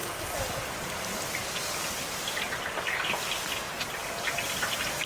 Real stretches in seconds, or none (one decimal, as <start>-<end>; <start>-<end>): 0.0-5.1